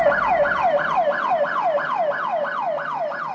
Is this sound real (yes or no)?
yes